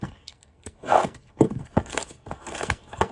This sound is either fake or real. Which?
fake